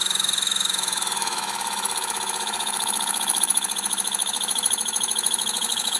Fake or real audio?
fake